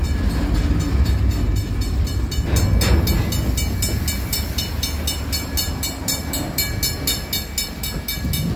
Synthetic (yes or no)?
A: no